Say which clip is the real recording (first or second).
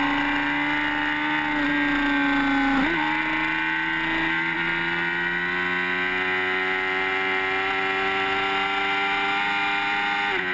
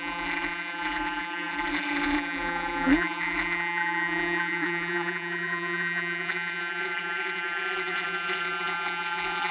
first